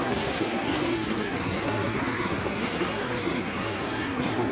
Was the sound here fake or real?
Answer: fake